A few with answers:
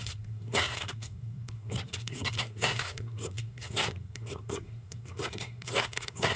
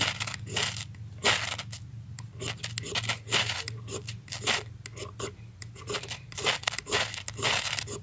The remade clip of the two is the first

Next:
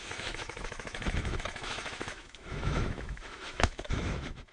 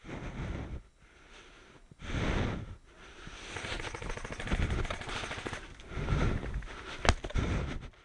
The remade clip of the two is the first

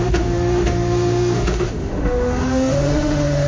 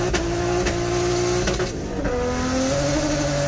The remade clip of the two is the first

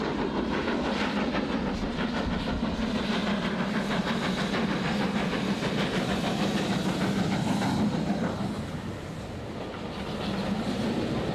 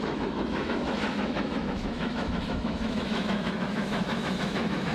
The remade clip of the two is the second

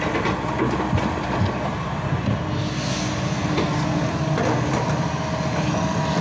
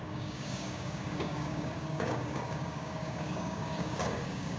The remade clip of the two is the second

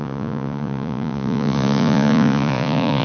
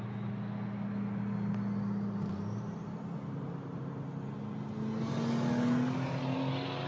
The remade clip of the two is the first